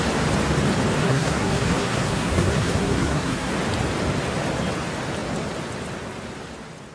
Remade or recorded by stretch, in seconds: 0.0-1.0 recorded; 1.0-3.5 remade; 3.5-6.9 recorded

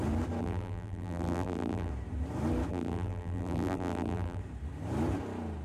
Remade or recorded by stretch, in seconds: 0.0-0.4 recorded; 0.4-1.9 remade; 1.9-2.7 recorded; 2.7-4.4 remade; 4.4-5.6 recorded

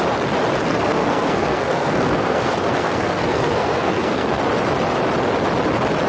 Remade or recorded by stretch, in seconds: 0.0-0.7 recorded; 0.7-4.4 remade; 4.4-6.1 recorded

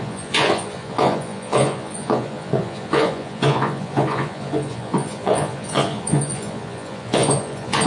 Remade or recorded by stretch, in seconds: 0.0-7.9 remade

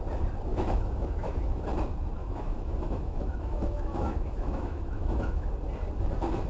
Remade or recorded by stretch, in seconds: 0.0-0.5 recorded; 0.5-1.6 remade; 1.6-2.2 recorded; 2.2-5.5 remade; 5.5-6.5 recorded

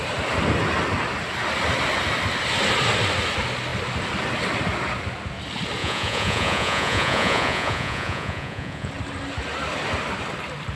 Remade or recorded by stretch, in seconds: 0.0-5.8 recorded; 5.8-8.9 remade; 8.9-10.8 recorded

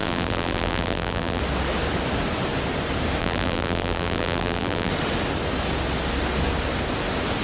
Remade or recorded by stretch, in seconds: 0.0-1.4 remade; 1.4-3.2 recorded; 3.2-4.9 remade; 4.9-7.4 recorded

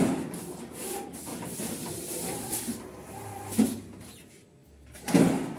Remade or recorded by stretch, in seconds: 0.0-1.3 recorded; 1.3-2.5 remade; 2.5-5.6 recorded